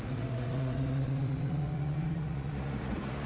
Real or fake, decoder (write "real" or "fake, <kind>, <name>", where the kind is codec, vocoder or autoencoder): fake, vocoder, Vocos